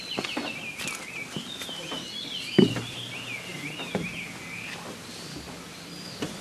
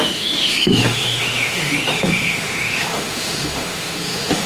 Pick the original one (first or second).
first